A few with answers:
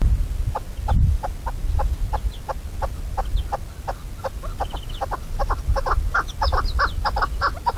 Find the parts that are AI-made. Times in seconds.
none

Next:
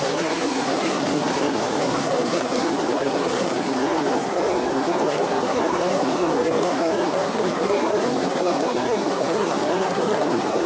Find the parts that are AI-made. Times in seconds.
0.0-10.7 (codec, SNAC)

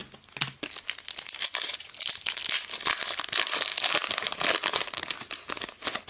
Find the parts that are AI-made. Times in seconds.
none

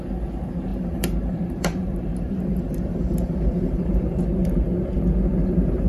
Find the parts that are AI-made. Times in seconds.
0.7-4.2 (vocoder, BigVGAN v2); 5.3-5.9